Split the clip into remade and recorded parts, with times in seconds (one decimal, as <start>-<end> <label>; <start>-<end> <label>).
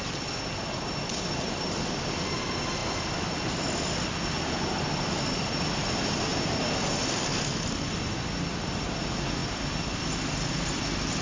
0.0-11.2 recorded